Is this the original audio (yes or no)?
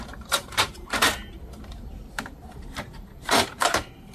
no